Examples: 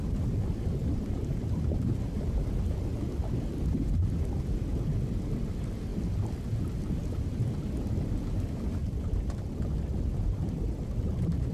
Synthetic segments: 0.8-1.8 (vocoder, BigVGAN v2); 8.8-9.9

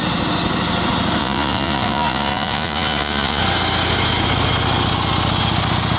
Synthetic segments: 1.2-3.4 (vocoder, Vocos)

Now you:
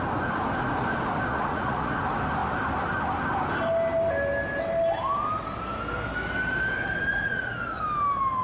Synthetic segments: 1.3-2.0 (vocoder, Vocos); 7.1-7.8

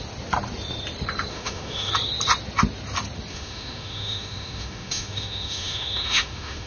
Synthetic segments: 1.3-1.9 (autoencoder, DAC-VAE); 3.3-6.7

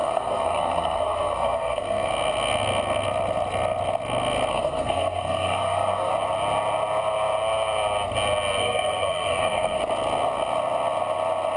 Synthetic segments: 0.0-2.1 (codec, SNAC); 4.5-6.1; 8.6-9.8

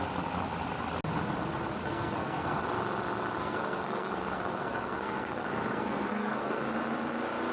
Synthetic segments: 1.8-2.6 (codec, SNAC); 3.4-6.6

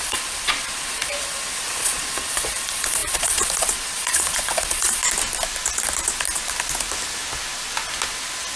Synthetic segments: 0.0-5.0 (vocoder, Vocos)